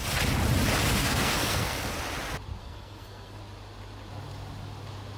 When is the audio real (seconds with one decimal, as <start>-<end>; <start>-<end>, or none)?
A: 0.0-1.0; 2.0-2.6; 3.4-5.2